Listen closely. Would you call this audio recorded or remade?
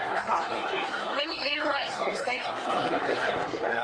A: remade